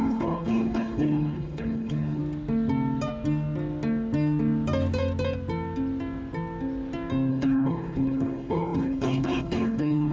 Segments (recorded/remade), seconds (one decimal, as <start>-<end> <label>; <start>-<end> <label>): 0.0-2.2 remade; 2.2-7.3 recorded; 7.3-10.1 remade